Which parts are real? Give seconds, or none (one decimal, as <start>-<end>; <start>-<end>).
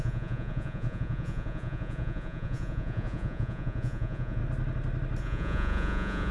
4.4-5.2